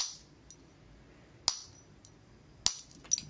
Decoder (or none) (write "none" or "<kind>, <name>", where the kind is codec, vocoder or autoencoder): none